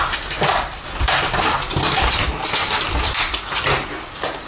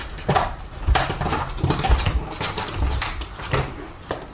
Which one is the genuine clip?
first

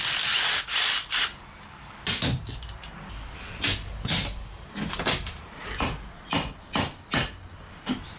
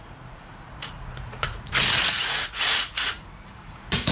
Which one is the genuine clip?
first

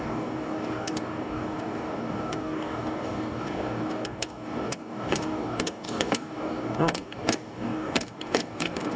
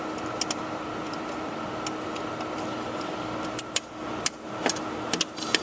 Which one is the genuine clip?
second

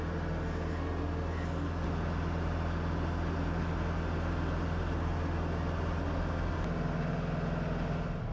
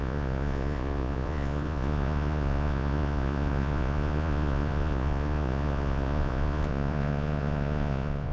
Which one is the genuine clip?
first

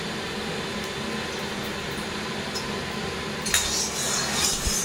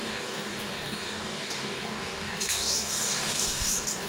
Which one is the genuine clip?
first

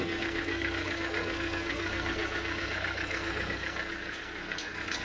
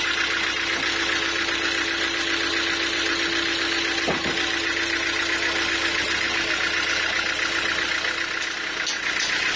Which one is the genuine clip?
second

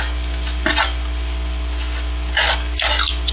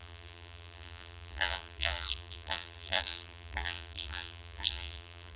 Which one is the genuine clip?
first